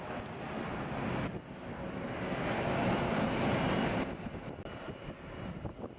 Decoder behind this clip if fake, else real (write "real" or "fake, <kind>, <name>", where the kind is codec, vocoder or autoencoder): real